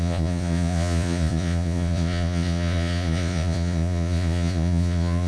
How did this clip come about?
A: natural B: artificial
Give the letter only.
B